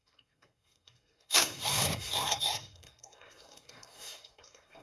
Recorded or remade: remade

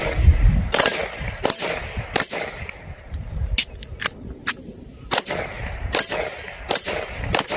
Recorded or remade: recorded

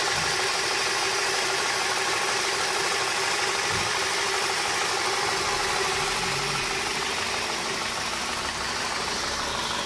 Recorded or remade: recorded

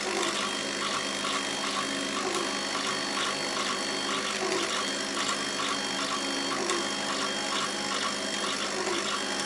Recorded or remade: recorded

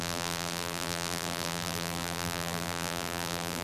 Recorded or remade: remade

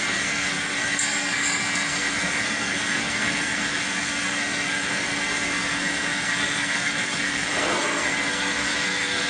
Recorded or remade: remade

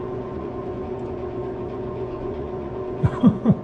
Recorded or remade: remade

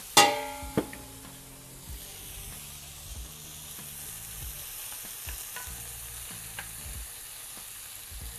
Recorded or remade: recorded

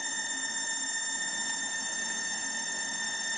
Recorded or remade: recorded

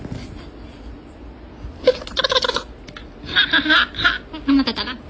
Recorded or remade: recorded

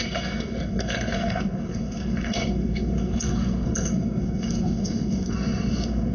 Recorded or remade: remade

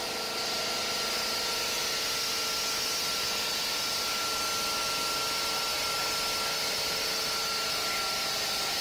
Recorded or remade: recorded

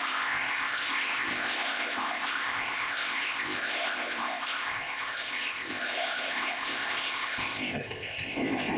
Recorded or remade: remade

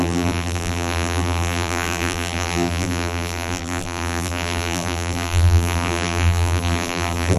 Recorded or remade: remade